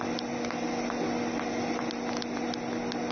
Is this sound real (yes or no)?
yes